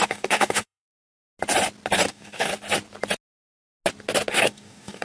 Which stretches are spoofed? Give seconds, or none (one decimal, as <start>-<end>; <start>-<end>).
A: 0.0-1.0; 2.1-2.5; 4.3-5.0